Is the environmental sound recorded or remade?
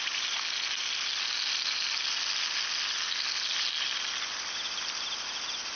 recorded